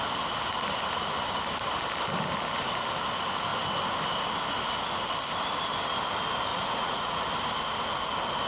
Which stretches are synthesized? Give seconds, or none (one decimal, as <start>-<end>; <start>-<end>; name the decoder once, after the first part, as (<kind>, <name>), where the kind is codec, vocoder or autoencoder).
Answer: 6.5-7.2 (vocoder, Vocos)